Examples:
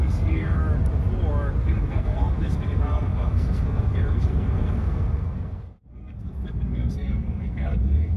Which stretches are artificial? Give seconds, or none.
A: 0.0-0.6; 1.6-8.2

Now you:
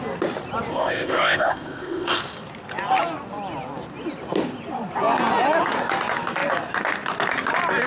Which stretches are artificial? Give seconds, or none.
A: 0.7-2.2

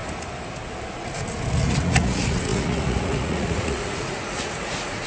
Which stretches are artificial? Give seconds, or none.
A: 1.5-5.1